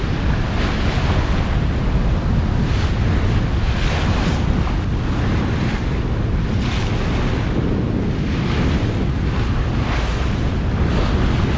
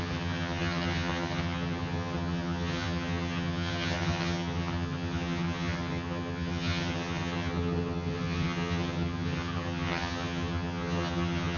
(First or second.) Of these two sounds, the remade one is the second